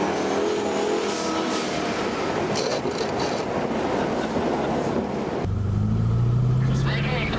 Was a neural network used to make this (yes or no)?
no